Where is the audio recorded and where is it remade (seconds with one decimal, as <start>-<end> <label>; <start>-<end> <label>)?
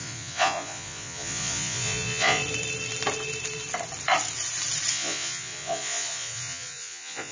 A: 0.0-2.4 remade; 2.4-4.9 recorded; 4.9-7.3 remade